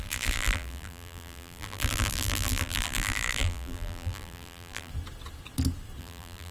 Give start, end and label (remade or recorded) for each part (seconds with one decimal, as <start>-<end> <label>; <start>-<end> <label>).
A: 0.0-4.9 remade; 4.9-6.0 recorded; 6.0-6.5 remade